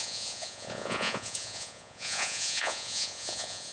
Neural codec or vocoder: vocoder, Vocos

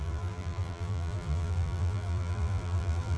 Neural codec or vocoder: vocoder, BigVGAN v2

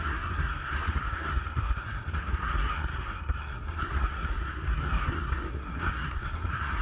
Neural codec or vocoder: codec, SNAC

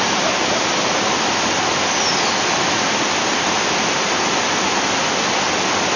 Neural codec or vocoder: none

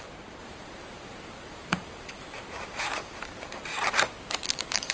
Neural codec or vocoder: vocoder, BigVGAN v2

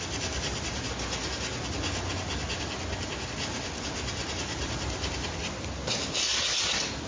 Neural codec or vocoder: none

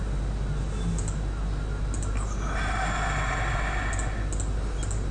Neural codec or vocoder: none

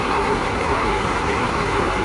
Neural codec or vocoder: codec, SNAC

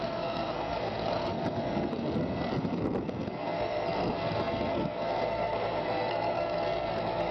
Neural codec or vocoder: codec, SNAC